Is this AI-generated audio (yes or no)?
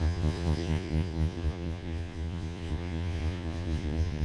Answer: yes